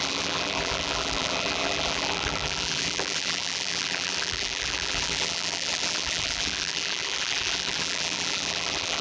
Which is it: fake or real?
fake